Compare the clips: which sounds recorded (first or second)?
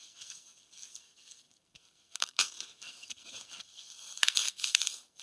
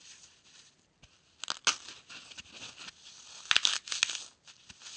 second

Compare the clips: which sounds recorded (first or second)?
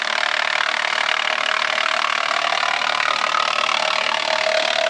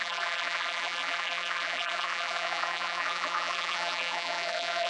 first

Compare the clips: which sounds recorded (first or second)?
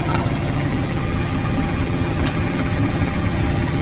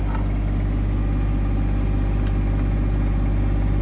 second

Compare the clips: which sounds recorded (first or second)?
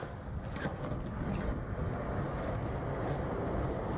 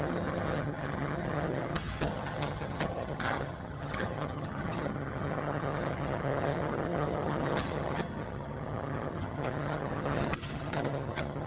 first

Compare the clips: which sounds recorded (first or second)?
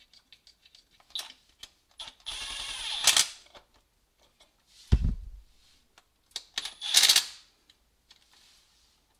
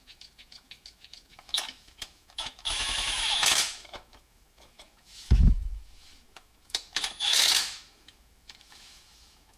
first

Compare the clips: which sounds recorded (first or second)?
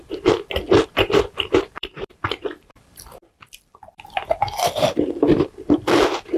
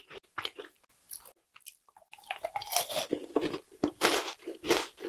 second